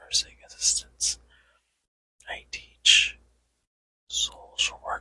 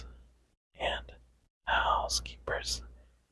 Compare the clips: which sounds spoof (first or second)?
second